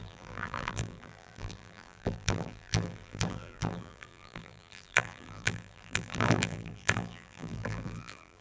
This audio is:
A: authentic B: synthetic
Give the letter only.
B